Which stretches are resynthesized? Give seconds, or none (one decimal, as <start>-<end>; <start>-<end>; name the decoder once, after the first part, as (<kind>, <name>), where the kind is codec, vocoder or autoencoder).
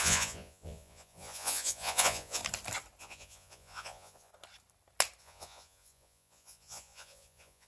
0.0-2.4 (vocoder, Vocos); 3.0-4.3; 5.2-7.7